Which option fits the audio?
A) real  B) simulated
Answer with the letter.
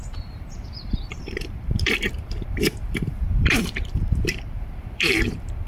B